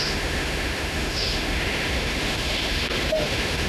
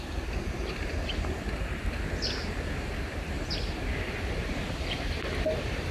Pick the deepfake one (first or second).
first